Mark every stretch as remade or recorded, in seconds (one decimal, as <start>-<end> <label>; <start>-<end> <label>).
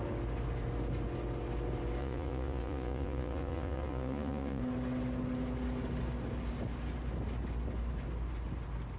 0.0-2.0 recorded; 2.0-4.6 remade; 4.6-9.0 recorded